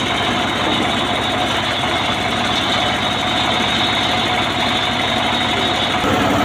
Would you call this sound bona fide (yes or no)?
yes